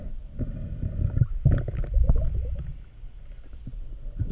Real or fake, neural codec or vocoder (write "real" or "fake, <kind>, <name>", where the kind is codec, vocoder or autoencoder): real